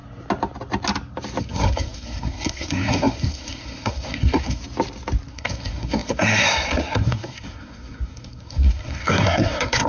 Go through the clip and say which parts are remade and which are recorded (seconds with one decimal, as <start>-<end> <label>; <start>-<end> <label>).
0.0-1.4 recorded; 1.4-4.6 remade; 4.6-5.3 recorded; 5.3-9.9 remade

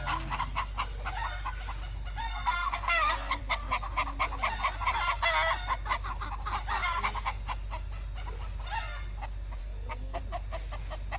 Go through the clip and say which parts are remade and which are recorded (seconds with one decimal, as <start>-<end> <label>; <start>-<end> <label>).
0.0-2.2 recorded; 2.2-3.4 remade; 3.4-9.6 recorded; 9.6-10.2 remade; 10.2-11.2 recorded

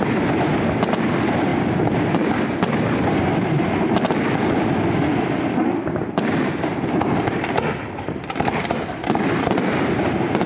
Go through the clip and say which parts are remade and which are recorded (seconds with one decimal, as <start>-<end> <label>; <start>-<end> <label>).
0.0-10.5 recorded

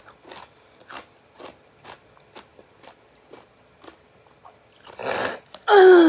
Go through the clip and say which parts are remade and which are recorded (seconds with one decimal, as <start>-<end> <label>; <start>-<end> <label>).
0.0-6.1 recorded

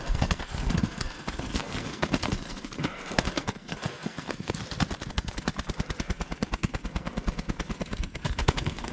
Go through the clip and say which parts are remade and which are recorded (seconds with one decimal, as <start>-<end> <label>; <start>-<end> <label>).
0.0-4.6 remade; 4.6-5.1 recorded; 5.1-5.5 remade; 5.5-6.0 recorded; 6.0-8.9 remade

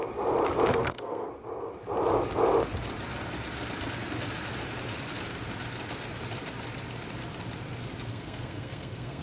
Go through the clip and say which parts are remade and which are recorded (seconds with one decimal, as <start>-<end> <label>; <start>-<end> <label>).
0.0-0.7 recorded; 0.7-1.3 remade; 1.3-8.1 recorded; 8.1-9.2 remade

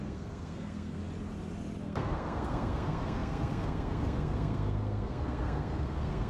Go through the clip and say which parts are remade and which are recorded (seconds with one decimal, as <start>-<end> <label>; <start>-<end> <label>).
0.0-1.0 remade; 1.0-1.8 recorded; 1.8-6.3 remade